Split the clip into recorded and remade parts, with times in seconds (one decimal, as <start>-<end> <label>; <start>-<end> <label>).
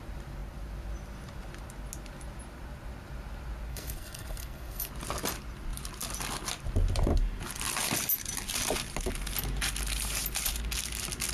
0.0-3.7 recorded; 3.7-4.9 remade; 4.9-11.3 recorded